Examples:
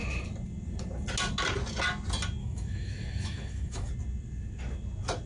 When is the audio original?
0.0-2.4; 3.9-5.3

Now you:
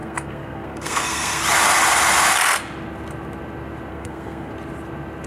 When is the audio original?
1.4-3.9; 4.5-5.3

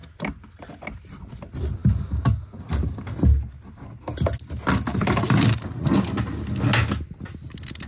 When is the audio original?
0.0-7.9

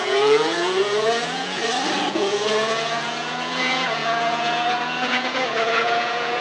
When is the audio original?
1.6-2.1